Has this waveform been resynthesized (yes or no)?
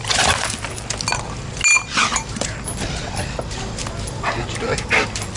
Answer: no